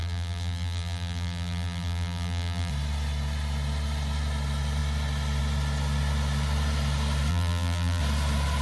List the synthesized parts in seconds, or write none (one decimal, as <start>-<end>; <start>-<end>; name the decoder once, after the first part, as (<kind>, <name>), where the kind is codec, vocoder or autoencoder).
0.0-2.7 (vocoder, BigVGAN v2); 7.3-8.0